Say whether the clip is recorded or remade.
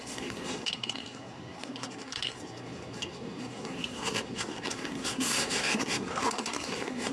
remade